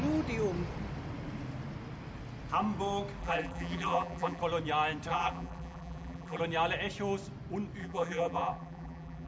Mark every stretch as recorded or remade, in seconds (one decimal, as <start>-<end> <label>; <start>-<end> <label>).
0.0-3.2 recorded; 3.2-4.4 remade; 4.4-5.1 recorded; 5.1-6.4 remade; 6.4-7.8 recorded; 7.8-9.3 remade